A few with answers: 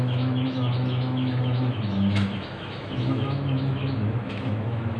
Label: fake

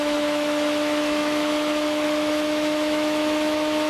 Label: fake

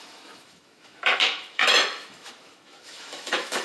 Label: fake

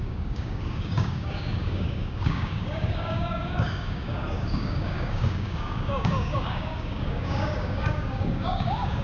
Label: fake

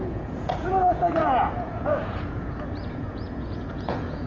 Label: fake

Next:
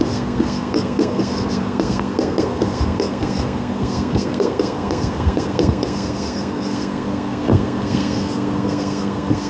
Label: fake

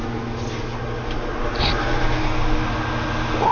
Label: real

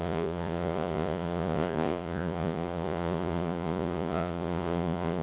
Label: fake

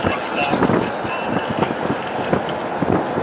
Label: real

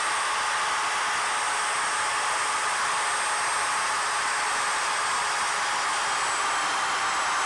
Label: real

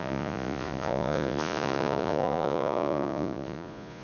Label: fake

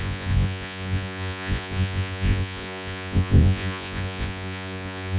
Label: fake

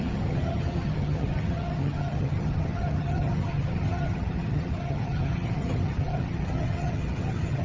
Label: fake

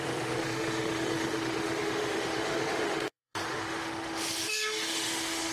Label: fake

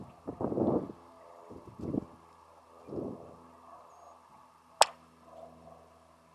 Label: real